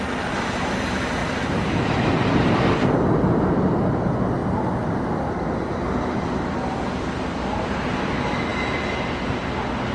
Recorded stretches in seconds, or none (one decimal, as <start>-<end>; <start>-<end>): 0.0-1.2; 2.0-4.4; 8.0-9.9